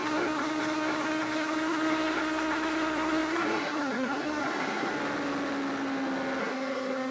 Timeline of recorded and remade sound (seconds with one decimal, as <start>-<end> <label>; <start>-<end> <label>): 0.0-4.9 remade; 4.9-6.4 recorded; 6.4-7.1 remade